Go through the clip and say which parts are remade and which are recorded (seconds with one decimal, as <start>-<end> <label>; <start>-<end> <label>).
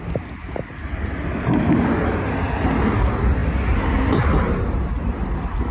0.0-5.7 recorded